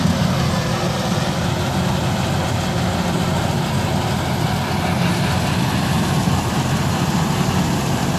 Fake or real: real